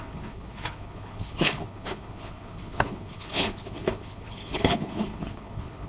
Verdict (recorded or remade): remade